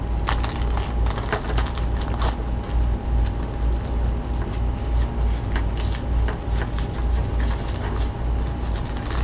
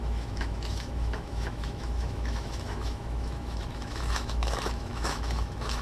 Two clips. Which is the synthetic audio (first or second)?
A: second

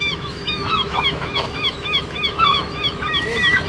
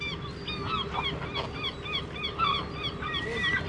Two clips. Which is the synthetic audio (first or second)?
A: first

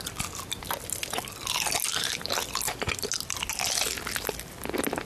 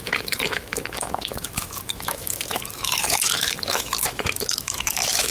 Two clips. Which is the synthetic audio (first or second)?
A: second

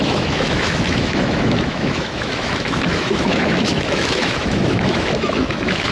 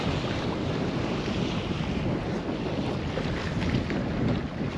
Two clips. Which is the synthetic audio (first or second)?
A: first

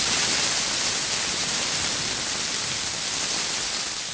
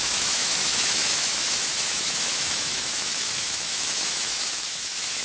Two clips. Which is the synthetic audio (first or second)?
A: second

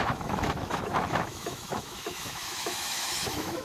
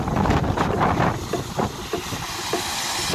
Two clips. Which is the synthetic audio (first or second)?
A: first